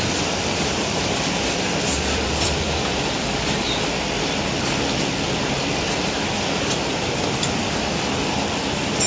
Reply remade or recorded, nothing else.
remade